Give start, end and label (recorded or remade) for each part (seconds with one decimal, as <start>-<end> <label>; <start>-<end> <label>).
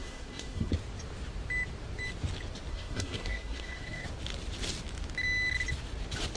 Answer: 0.0-0.7 remade; 0.7-2.7 recorded; 2.7-4.1 remade; 4.1-6.4 recorded